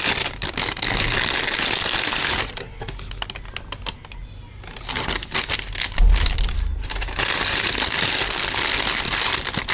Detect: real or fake real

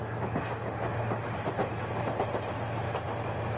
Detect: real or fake real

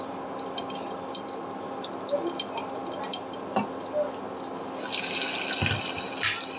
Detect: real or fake real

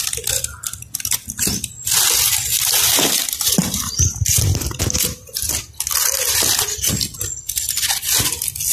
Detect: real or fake real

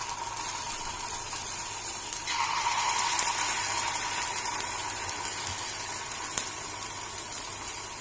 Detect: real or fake real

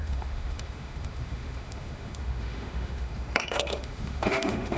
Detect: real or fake fake